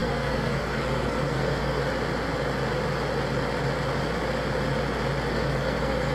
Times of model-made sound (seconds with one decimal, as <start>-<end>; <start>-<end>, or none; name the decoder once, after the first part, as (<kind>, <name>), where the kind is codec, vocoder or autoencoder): 0.0-1.8 (codec, SNAC); 5.3-6.1